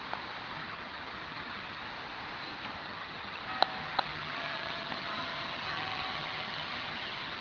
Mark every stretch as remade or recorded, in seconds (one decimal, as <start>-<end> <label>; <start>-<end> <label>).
0.0-0.6 recorded; 0.6-1.8 remade; 1.8-2.8 recorded; 2.8-3.4 remade; 3.4-3.8 recorded; 3.8-7.4 remade